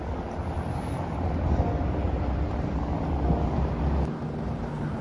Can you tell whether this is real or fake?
real